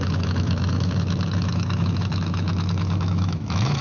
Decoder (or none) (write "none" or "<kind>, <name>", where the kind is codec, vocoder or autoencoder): autoencoder, DAC-VAE